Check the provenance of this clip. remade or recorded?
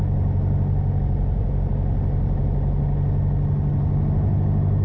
recorded